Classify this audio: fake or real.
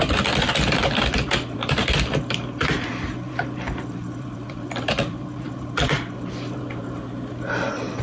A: fake